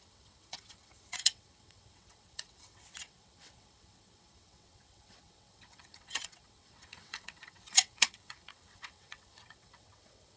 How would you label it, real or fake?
fake